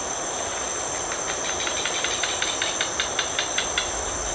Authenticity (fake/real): real